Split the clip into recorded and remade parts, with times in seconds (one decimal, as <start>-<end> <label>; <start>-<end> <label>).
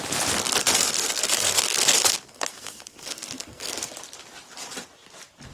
0.0-0.6 recorded; 0.6-3.9 remade; 3.9-5.5 recorded